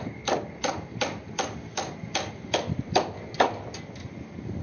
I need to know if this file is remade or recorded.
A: recorded